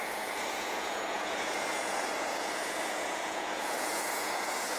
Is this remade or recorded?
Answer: remade